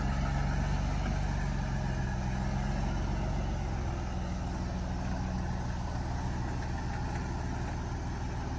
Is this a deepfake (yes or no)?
no